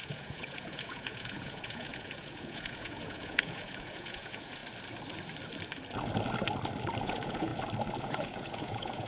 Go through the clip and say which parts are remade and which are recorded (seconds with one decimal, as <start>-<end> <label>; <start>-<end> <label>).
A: 0.0-4.6 remade; 4.6-7.0 recorded; 7.0-7.5 remade; 7.5-8.0 recorded; 8.0-9.1 remade

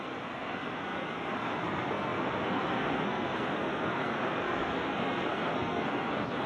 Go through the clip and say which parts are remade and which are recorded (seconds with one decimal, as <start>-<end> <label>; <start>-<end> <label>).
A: 0.0-6.5 remade

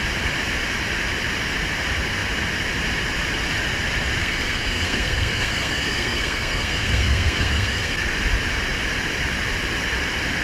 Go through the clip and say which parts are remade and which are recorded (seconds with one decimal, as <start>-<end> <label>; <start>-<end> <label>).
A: 0.0-4.2 recorded; 4.2-8.0 remade; 8.0-10.4 recorded